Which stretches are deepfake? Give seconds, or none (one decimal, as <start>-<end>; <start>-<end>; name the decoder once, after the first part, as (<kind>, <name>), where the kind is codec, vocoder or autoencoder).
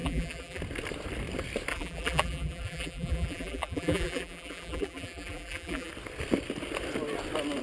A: 0.0-0.6 (vocoder, BigVGAN v2); 1.7-5.9